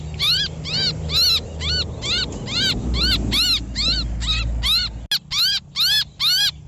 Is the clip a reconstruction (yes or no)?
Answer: no